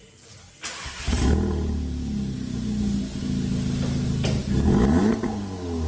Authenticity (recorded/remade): recorded